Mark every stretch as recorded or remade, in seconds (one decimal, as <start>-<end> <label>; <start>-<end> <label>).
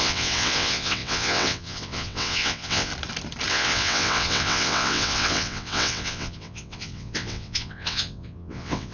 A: 0.0-2.9 remade; 2.9-3.5 recorded; 3.5-8.9 remade